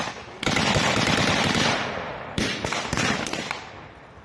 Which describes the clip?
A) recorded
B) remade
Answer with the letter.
B